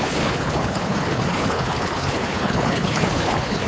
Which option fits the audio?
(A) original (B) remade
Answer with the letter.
B